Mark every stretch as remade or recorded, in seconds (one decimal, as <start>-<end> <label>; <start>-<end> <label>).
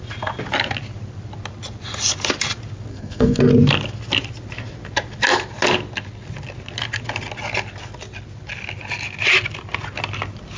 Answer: 0.0-2.9 recorded; 2.9-3.5 remade; 3.5-10.6 recorded